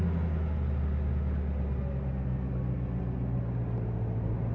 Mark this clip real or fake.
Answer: real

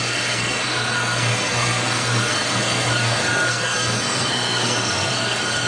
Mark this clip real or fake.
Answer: fake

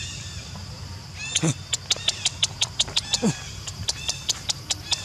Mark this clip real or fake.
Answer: real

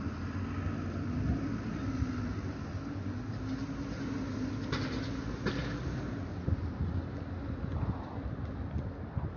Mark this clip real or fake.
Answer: real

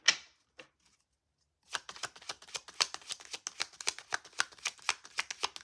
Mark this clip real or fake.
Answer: real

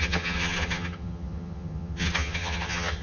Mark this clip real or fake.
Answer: fake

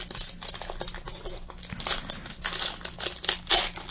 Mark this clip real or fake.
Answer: real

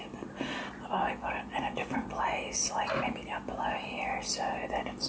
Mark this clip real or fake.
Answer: real